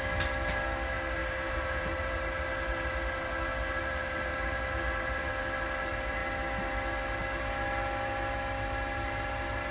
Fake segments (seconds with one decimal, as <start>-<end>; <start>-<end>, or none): 1.2-5.3